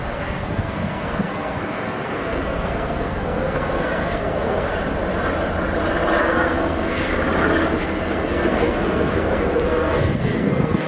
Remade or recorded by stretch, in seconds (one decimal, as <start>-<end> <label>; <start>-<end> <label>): 0.0-4.7 remade; 4.7-6.2 recorded; 6.2-7.1 remade; 7.1-7.8 recorded; 7.8-10.9 remade